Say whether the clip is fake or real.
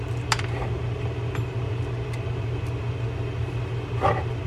real